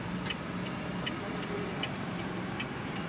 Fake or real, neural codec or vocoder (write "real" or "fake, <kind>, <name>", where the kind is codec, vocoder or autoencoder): fake, vocoder, BigVGAN v2